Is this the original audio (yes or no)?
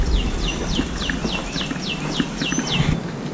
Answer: yes